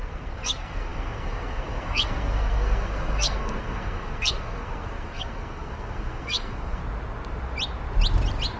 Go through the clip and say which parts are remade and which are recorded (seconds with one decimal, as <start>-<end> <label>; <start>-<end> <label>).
0.0-6.8 remade; 6.8-8.6 recorded